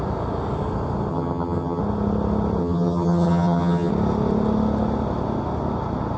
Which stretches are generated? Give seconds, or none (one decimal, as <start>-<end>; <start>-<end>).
1.1-1.8; 2.6-3.9